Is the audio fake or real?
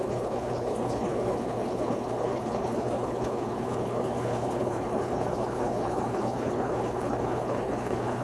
fake